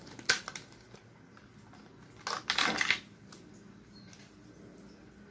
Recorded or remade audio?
recorded